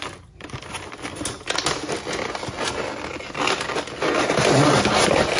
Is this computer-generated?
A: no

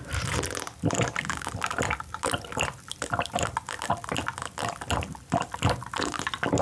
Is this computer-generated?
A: no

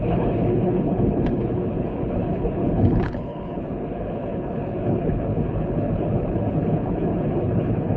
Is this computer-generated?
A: yes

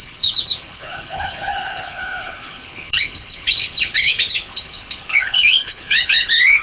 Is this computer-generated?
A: yes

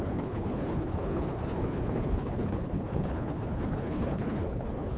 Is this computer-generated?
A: yes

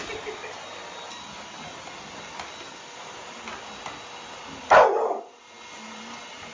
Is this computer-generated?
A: no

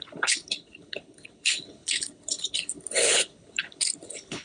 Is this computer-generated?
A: yes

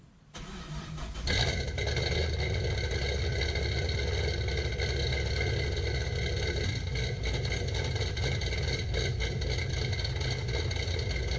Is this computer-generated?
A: no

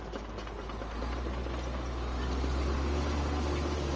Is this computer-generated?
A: no